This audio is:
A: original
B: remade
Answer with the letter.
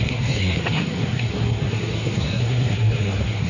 B